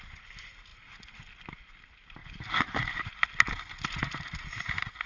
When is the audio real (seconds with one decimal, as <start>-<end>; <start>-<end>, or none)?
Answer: 0.0-2.2; 3.6-5.1